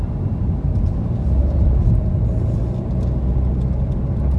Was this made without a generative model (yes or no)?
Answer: yes